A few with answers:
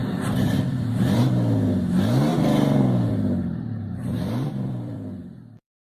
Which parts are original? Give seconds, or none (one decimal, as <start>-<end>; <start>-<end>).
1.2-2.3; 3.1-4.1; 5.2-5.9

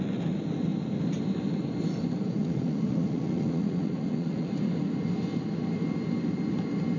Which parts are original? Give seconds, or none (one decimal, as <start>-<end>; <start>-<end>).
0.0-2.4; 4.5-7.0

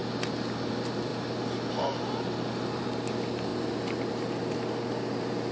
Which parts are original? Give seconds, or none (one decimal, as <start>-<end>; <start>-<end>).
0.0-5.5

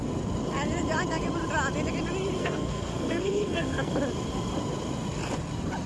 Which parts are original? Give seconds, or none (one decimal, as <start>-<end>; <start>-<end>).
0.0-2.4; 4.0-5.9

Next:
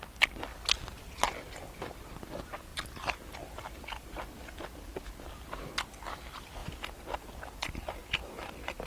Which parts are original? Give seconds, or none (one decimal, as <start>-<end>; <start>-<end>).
0.0-8.9